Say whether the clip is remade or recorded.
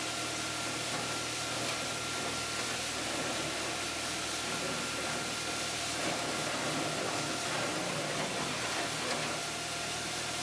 recorded